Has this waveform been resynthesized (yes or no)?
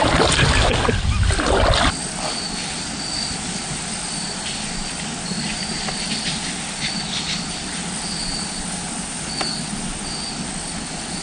no